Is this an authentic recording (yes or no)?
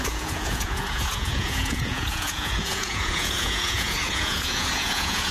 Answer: no